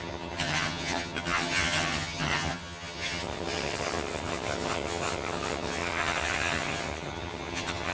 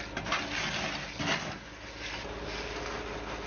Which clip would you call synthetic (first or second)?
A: first